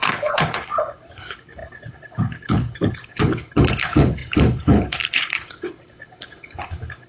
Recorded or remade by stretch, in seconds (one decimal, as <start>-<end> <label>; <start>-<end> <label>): 0.0-7.1 remade